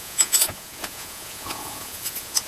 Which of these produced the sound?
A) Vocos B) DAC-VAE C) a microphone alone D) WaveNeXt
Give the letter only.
A